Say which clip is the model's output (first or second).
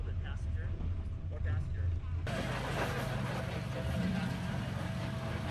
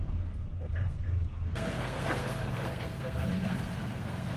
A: second